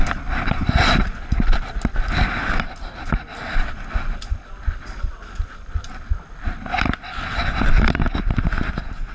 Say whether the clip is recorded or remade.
recorded